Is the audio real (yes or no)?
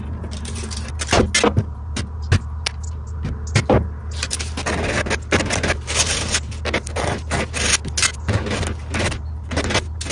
yes